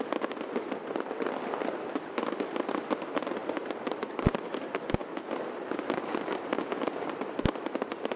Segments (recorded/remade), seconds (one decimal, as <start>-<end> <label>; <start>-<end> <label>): 0.0-8.2 recorded